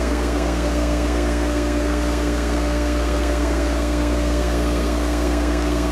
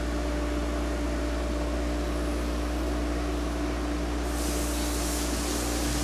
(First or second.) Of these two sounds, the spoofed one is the first